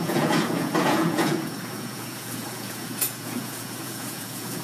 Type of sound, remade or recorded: remade